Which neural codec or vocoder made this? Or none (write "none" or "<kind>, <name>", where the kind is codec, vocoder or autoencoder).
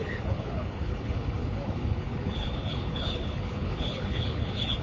codec, HILCodec